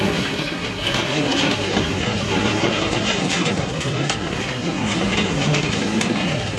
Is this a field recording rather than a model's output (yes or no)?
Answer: no